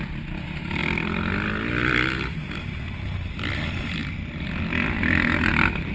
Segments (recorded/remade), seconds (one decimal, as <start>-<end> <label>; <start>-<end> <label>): 0.0-5.9 recorded